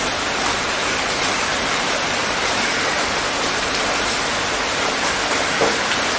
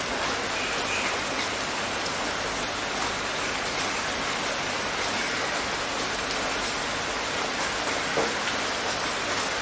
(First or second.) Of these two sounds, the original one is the second